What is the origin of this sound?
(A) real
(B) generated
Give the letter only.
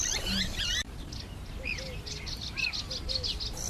A